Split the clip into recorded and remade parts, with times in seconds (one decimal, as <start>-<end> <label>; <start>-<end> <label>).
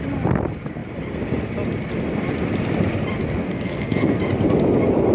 0.0-3.4 recorded; 3.4-4.2 remade; 4.2-5.1 recorded